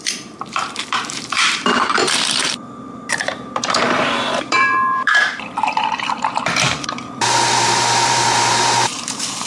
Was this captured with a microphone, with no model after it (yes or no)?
no